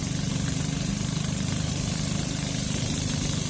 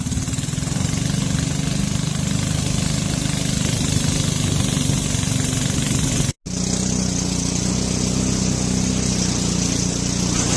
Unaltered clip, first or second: second